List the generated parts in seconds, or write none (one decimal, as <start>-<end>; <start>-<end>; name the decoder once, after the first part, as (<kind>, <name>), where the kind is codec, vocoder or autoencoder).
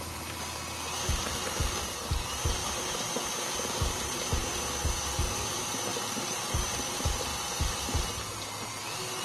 5.9-6.5 (vocoder, BigVGAN v2)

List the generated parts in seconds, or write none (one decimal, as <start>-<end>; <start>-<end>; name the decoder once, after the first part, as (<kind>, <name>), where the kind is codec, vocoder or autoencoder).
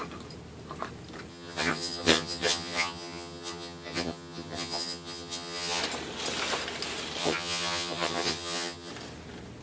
1.3-5.8 (vocoder, HiFi-GAN); 7.2-8.9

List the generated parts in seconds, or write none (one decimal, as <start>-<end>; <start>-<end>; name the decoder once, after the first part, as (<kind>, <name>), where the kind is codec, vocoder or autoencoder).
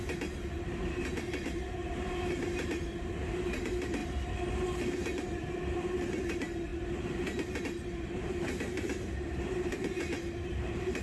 0.0-11.0 (vocoder, BigVGAN v2)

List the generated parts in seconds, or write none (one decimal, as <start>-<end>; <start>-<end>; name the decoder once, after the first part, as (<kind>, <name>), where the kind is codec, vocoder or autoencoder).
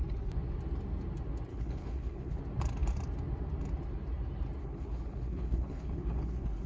1.5-2.4 (codec, HILCodec); 4.6-6.7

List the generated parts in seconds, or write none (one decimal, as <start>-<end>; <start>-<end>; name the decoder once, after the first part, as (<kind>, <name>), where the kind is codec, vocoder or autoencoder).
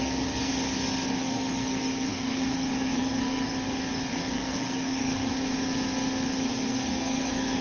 0.0-0.5 (codec, SNAC); 1.2-3.5; 4.1-5.3; 6.5-7.6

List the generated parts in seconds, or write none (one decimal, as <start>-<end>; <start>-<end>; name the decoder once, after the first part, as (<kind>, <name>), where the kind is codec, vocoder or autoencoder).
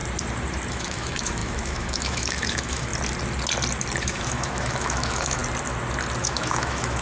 0.7-2.9 (autoencoder, DAC-VAE); 4.0-5.4; 6.2-7.0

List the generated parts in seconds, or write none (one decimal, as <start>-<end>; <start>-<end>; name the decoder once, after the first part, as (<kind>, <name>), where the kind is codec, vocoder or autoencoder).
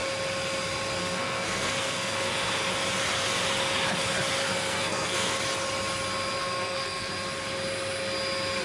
1.0-2.5 (codec, SNAC); 4.4-5.4; 6.4-7.1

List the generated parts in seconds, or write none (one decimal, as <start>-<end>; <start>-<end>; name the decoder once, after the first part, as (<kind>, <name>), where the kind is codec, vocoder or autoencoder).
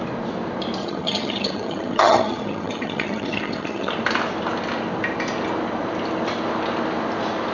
0.8-3.9 (vocoder, HiFi-GAN)